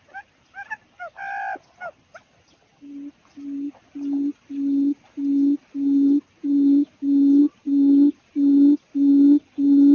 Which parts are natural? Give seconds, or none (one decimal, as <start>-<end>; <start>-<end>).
0.0-9.9